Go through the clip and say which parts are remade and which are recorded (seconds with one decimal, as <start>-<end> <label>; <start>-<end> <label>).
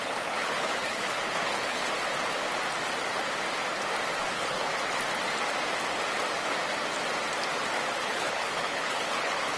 0.0-1.9 remade; 1.9-4.3 recorded; 4.3-4.7 remade; 4.7-8.0 recorded; 8.0-9.6 remade